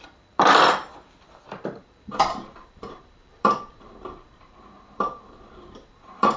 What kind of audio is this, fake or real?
fake